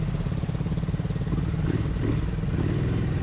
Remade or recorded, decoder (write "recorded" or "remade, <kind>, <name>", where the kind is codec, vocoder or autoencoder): recorded